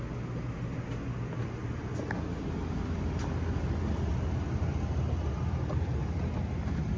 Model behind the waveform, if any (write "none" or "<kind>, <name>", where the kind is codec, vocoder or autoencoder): none